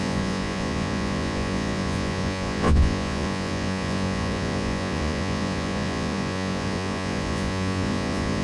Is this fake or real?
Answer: fake